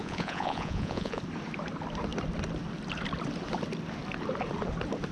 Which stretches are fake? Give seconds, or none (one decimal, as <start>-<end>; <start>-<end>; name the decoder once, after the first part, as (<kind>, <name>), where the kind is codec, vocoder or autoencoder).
0.0-1.2 (vocoder, Vocos)